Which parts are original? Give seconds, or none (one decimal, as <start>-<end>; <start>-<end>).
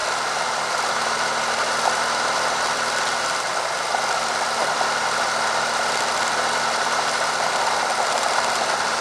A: 0.0-9.0